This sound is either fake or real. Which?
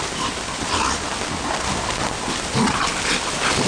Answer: real